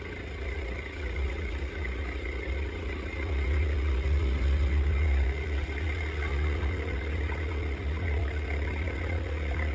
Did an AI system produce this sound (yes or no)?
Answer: yes